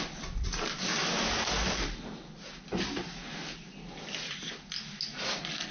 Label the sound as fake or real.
real